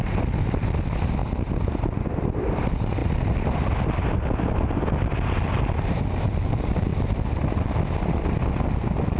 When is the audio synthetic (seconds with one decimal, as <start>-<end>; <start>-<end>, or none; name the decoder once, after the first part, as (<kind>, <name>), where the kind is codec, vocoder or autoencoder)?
none